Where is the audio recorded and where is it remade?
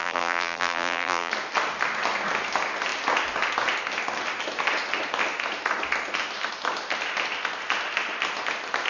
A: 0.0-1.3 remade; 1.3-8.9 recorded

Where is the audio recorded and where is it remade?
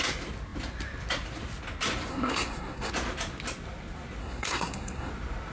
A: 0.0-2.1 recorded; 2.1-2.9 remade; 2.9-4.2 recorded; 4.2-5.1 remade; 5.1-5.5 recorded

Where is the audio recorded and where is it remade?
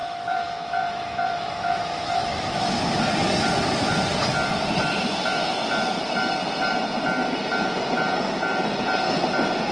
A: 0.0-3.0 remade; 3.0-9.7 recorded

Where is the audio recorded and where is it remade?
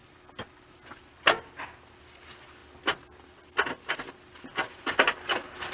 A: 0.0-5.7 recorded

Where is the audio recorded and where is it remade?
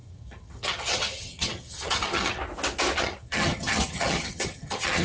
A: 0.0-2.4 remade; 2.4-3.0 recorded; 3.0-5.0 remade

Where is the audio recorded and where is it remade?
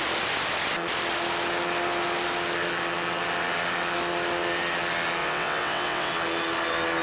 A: 0.0-5.2 recorded; 5.2-6.1 remade; 6.1-7.0 recorded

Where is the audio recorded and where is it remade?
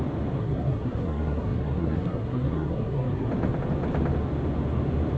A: 0.0-0.4 recorded; 0.4-3.3 remade; 3.3-5.2 recorded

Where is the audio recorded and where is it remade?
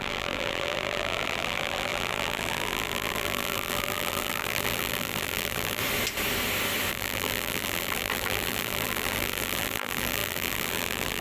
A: 0.0-5.8 remade; 5.8-6.9 recorded; 6.9-11.2 remade